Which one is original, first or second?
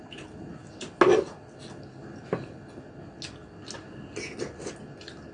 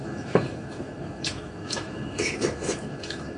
first